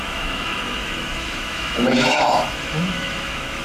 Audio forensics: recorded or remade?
remade